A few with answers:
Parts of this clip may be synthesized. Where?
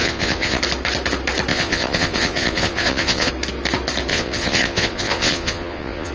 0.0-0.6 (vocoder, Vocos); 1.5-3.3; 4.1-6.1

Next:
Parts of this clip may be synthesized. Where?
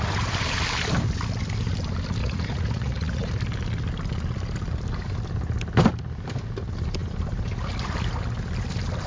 2.2-3.3 (vocoder, Vocos)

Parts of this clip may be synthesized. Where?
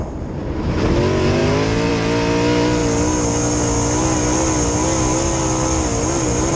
none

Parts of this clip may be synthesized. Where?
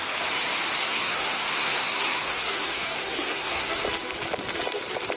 0.8-3.7 (codec, SNAC)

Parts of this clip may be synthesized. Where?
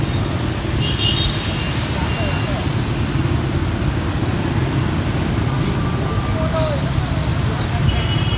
3.6-4.2 (vocoder, BigVGAN v2); 7.3-8.4